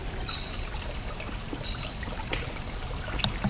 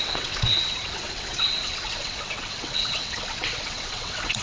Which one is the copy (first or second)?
second